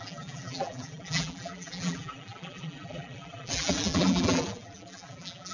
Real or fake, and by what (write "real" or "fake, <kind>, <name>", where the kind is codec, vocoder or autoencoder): fake, vocoder, BigVGAN v2